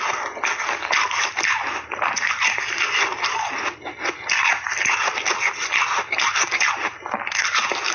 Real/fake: real